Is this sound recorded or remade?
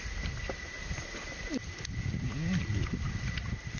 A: recorded